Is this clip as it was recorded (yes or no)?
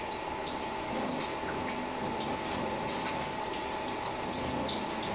yes